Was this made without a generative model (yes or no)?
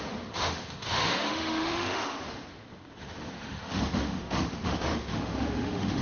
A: no